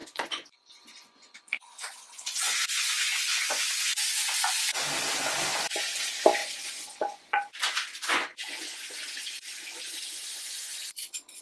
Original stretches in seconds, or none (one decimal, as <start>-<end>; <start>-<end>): 4.4-6.4